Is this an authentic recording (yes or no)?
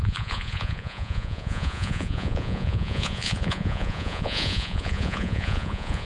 no